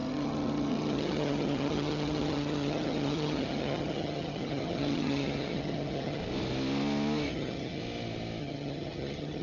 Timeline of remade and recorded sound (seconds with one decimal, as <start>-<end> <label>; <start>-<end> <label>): 0.0-6.2 remade; 6.2-7.3 recorded; 7.3-7.8 remade; 7.8-8.4 recorded; 8.4-9.4 remade

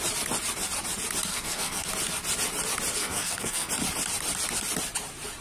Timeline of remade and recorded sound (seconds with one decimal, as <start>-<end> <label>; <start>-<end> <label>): 0.0-1.3 recorded; 1.3-1.9 remade; 1.9-3.0 recorded; 3.0-3.7 remade; 3.7-5.4 recorded